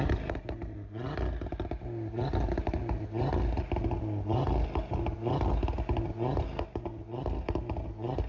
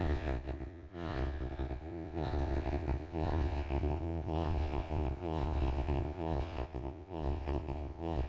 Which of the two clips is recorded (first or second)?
first